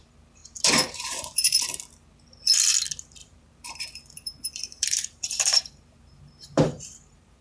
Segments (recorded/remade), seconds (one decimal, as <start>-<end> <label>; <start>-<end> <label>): 0.0-0.4 recorded; 0.4-1.8 remade; 1.8-3.2 recorded; 3.2-7.4 remade